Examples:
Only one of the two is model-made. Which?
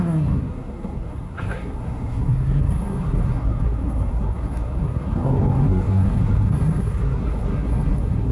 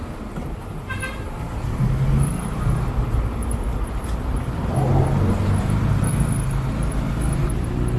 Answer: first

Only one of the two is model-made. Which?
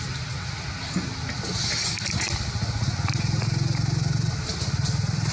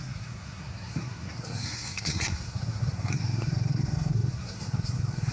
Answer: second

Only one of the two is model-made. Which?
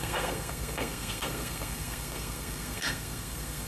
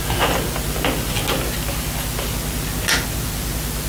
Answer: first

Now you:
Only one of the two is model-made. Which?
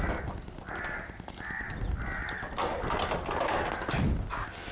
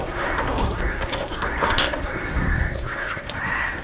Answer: second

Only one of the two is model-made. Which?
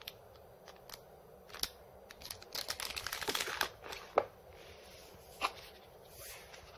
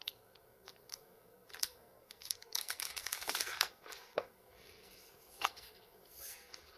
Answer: second